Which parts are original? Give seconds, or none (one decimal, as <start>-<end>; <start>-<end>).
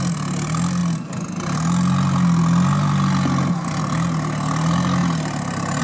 0.0-5.8